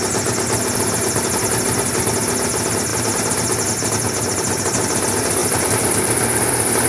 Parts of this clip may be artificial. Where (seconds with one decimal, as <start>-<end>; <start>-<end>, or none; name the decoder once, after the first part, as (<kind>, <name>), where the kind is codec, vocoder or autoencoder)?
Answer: 5.4-6.5 (vocoder, BigVGAN v2)